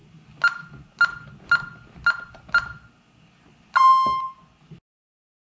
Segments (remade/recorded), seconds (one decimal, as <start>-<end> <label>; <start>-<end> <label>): 0.0-5.6 recorded